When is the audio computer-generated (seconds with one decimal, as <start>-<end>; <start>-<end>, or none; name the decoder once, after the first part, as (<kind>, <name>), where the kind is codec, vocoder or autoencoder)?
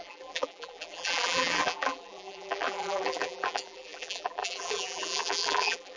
0.0-6.0 (vocoder, BigVGAN v2)